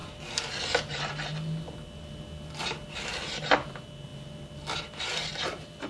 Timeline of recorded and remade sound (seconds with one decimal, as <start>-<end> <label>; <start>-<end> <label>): 0.0-5.9 recorded